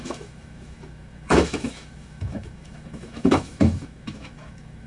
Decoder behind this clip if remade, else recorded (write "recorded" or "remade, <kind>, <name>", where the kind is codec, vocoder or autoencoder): remade, autoencoder, DAC-VAE